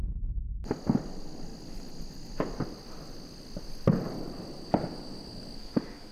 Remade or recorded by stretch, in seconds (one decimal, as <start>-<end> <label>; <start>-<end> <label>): 0.0-5.6 recorded; 5.6-6.1 remade